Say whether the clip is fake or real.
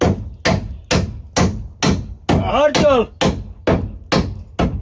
real